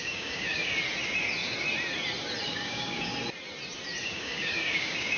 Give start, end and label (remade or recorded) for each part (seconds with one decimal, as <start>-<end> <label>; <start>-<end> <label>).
0.0-0.7 remade; 0.7-2.5 recorded; 2.5-3.1 remade; 3.1-4.0 recorded; 4.0-5.2 remade